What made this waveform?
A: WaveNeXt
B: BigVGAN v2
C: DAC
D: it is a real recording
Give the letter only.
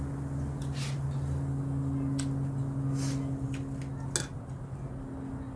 D